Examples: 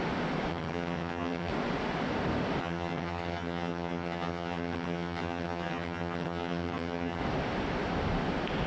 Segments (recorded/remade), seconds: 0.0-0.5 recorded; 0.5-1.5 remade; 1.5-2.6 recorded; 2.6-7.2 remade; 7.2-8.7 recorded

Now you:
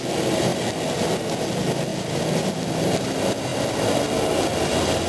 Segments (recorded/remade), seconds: 0.0-1.9 recorded; 1.9-2.5 remade; 2.5-5.1 recorded

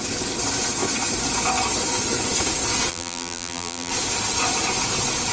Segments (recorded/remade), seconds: 0.0-2.9 recorded; 2.9-3.9 remade; 3.9-5.3 recorded

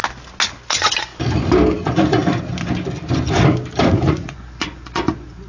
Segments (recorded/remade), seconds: 0.0-0.7 recorded; 0.7-1.1 remade; 1.1-1.7 recorded; 1.7-2.2 remade; 2.2-3.9 recorded; 3.9-5.5 remade

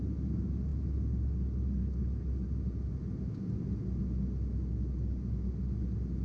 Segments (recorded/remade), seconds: 0.0-6.2 recorded

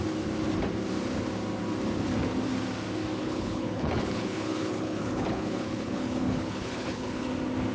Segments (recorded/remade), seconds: 0.0-3.2 recorded; 3.2-7.3 remade; 7.3-7.7 recorded

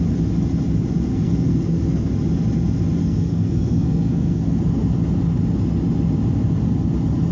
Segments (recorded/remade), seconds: 0.0-1.1 recorded; 1.1-2.1 remade; 2.1-3.0 recorded; 3.0-4.6 remade; 4.6-7.3 recorded